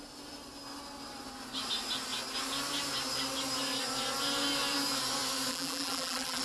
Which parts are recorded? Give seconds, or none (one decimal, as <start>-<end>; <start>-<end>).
0.0-5.5